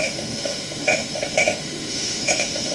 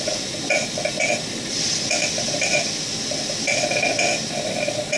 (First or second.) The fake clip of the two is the first